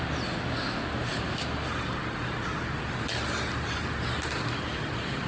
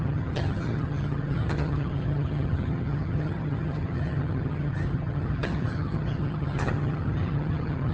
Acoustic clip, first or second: first